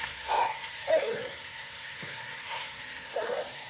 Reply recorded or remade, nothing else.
remade